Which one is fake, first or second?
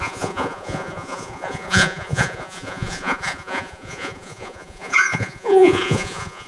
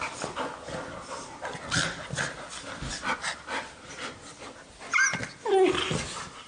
first